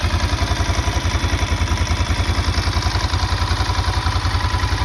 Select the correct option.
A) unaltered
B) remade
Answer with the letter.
A